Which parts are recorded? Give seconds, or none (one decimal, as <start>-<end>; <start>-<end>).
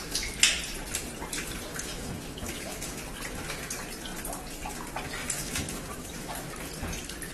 0.0-1.7; 3.0-5.2; 6.3-7.3